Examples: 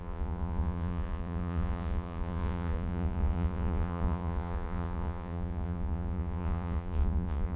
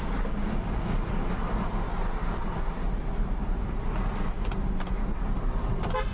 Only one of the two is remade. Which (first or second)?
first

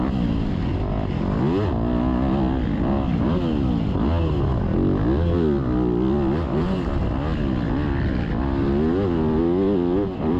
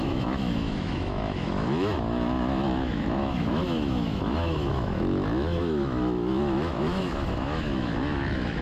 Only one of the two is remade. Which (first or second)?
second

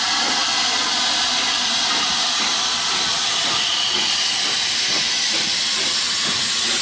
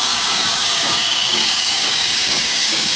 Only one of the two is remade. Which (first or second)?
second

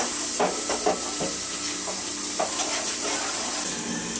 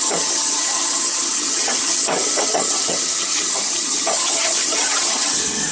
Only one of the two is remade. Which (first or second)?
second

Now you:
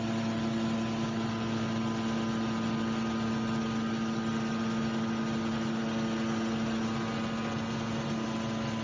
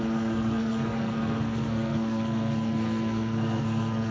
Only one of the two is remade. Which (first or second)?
second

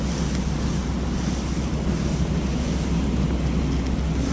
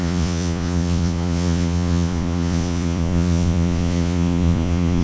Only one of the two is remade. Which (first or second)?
second